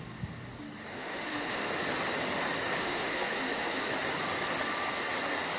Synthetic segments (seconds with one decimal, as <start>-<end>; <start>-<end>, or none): 1.0-1.7; 2.8-3.9